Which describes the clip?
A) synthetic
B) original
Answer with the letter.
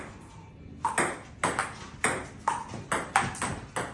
B